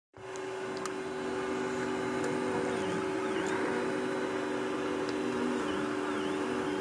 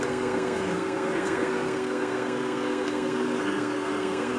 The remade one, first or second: second